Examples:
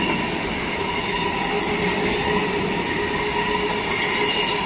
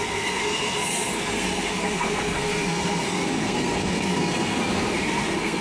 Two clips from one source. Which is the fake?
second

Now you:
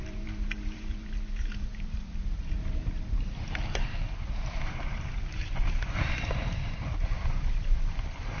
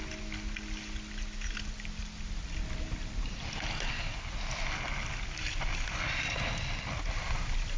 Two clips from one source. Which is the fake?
first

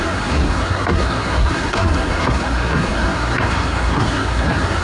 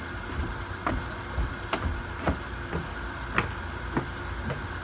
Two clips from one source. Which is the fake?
first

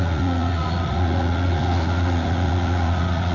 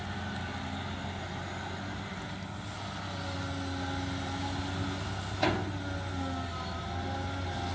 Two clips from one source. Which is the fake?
first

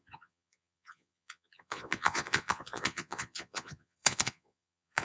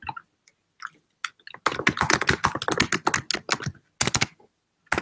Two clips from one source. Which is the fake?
first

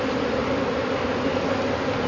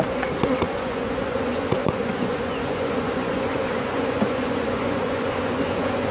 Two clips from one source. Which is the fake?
second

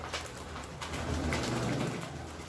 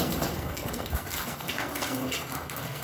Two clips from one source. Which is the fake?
second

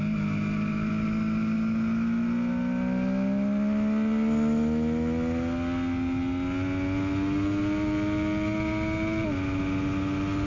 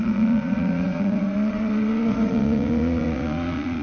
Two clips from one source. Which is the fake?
second